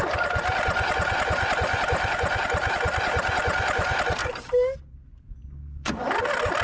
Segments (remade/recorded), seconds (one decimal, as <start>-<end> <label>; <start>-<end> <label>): 0.0-4.2 recorded; 4.2-5.4 remade; 5.4-6.6 recorded